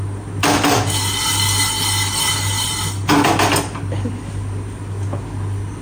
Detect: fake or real real